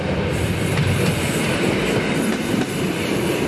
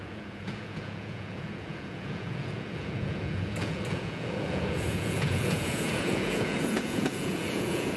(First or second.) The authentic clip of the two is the first